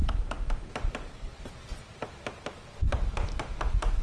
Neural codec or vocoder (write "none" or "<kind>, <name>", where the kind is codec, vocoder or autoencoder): none